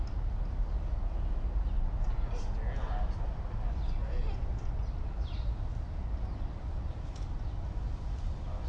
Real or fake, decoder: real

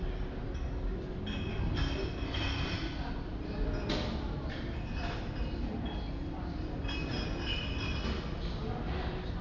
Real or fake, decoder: real